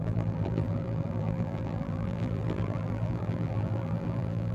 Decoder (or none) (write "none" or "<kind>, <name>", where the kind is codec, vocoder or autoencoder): vocoder, BigVGAN v2